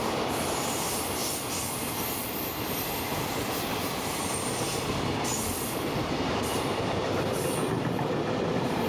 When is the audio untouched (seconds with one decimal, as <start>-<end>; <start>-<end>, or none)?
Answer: 0.0-8.9